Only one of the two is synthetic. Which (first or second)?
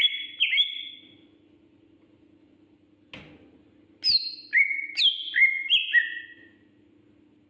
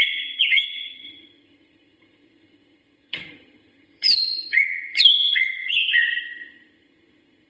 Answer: second